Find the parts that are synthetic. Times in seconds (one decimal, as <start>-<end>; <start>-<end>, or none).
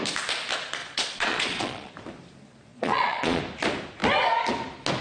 0.8-1.9; 2.7-3.4